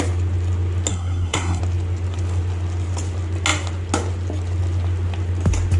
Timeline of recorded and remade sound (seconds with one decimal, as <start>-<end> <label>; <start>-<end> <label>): 0.0-0.9 recorded; 0.9-1.6 remade; 1.6-5.8 recorded